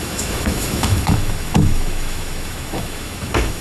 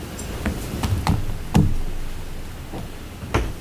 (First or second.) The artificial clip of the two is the first